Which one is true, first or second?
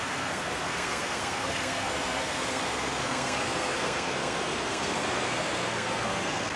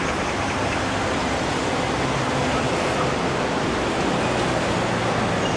second